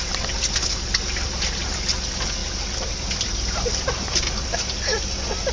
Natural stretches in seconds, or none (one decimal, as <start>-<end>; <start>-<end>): 0.0-5.5

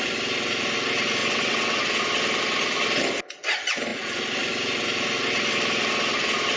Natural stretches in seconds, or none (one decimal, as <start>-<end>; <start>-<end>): 0.0-1.2; 1.8-6.6

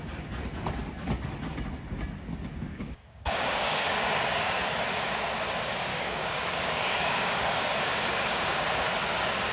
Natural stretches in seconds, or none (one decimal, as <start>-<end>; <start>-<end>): 0.0-2.7; 3.8-5.9; 8.7-9.5